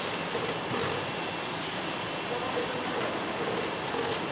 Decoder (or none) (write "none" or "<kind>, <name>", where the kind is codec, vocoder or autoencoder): none